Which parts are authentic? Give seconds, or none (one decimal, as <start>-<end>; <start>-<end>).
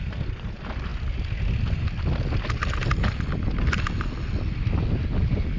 0.0-5.6